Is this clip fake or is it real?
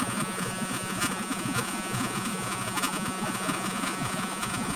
fake